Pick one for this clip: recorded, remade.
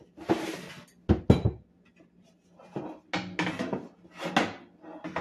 recorded